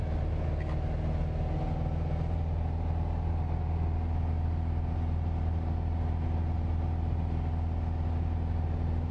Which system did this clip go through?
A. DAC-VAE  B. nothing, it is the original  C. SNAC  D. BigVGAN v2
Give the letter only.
B